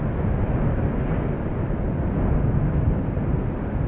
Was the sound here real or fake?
real